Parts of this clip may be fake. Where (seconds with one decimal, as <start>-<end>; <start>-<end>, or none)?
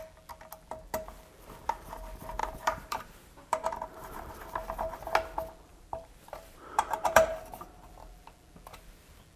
2.4-4.3; 5.7-7.7